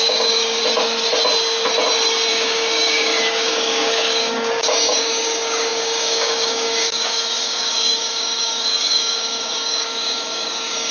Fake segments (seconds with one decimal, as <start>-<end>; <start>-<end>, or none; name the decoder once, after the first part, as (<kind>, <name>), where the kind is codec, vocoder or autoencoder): 0.0-0.6 (codec, DAC); 2.3-10.9